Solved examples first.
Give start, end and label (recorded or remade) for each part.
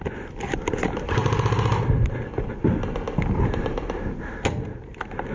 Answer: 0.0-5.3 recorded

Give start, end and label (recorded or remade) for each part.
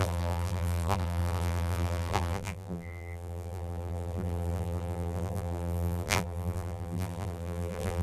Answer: 0.0-8.0 remade